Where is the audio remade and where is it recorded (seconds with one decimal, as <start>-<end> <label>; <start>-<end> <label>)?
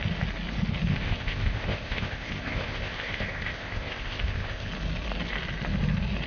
0.0-0.9 recorded; 0.9-4.7 remade; 4.7-6.3 recorded